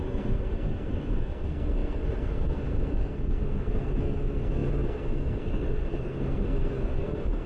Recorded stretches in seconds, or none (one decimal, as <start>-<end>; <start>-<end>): none